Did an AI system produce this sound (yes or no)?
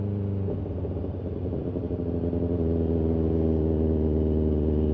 no